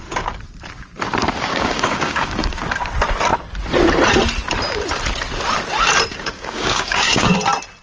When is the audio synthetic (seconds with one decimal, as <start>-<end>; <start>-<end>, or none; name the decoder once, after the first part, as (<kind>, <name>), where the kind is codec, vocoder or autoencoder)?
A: 1.5-2.6 (codec, DAC); 6.1-7.3